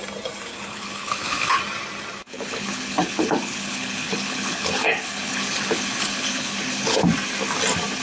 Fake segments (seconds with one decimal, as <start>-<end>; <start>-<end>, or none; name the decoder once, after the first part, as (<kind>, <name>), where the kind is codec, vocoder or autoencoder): 0.5-1.6 (codec, HILCodec); 2.2-7.0